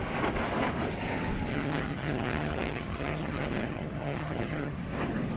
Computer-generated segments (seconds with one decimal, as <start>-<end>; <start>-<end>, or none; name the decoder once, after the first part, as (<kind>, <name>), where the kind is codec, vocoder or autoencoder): 1.5-4.7 (vocoder, HiFi-GAN)